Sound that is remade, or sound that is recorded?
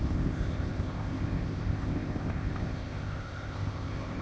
remade